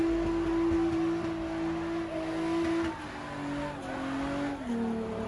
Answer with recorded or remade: recorded